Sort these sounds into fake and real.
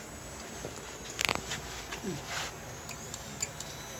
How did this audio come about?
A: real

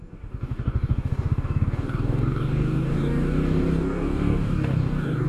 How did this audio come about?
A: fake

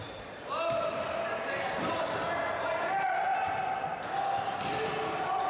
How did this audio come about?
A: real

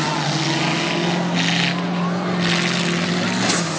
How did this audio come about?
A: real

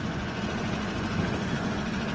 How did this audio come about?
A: fake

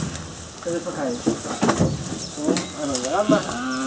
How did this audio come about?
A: real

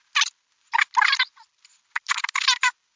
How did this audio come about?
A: real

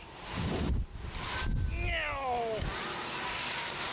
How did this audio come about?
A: real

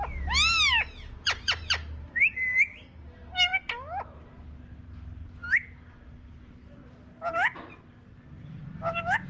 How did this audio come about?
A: real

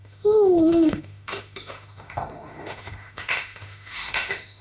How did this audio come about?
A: fake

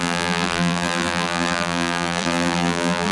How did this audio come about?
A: fake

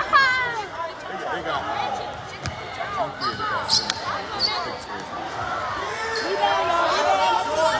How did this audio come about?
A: real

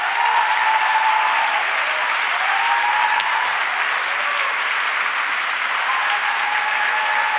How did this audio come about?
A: real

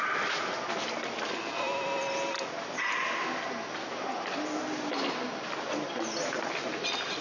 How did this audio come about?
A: real